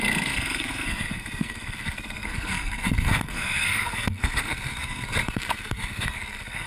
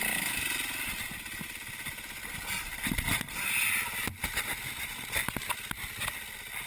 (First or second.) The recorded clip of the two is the second